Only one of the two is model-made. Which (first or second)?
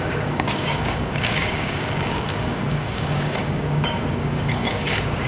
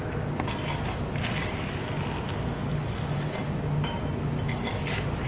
first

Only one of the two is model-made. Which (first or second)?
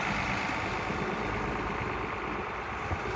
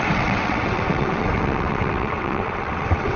second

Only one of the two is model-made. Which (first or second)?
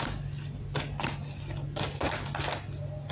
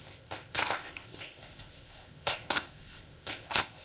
second